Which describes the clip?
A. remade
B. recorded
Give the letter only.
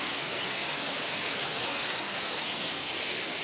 A